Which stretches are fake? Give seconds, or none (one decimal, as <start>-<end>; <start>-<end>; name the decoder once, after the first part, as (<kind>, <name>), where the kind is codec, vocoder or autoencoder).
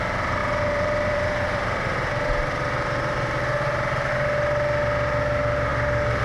0.4-4.1 (vocoder, BigVGAN v2)